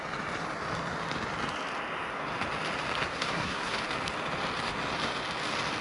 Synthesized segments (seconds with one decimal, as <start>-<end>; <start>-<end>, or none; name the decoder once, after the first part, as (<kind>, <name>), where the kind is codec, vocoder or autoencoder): 3.1-3.8 (codec, SNAC)